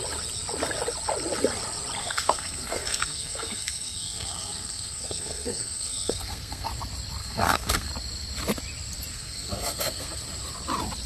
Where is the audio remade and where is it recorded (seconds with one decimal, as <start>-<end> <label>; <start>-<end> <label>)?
0.0-2.0 recorded; 2.0-6.7 remade; 6.7-7.2 recorded; 7.2-7.9 remade; 7.9-9.1 recorded; 9.1-10.2 remade; 10.2-11.1 recorded